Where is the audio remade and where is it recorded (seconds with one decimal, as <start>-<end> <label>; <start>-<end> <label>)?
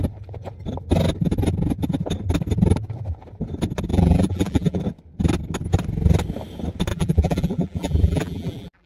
0.0-3.9 recorded; 3.9-4.8 remade; 4.8-6.9 recorded; 6.9-8.9 remade